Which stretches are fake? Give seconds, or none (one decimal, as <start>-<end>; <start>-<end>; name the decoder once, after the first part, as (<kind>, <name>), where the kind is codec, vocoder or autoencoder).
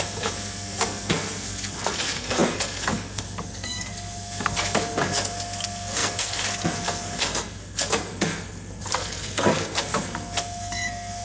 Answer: 0.0-11.2 (codec, SNAC)